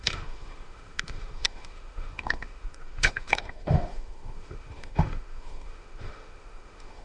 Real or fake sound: fake